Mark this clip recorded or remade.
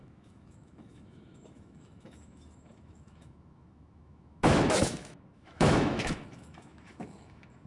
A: remade